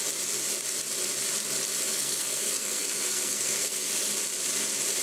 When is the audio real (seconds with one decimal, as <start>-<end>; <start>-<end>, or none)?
0.0-1.9; 3.9-5.0